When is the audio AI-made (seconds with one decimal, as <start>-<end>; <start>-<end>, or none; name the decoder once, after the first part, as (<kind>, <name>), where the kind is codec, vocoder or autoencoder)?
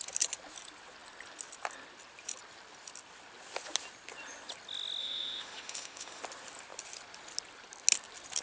5.0-6.2 (autoencoder, DAC-VAE)